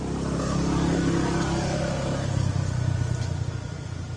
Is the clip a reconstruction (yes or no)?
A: no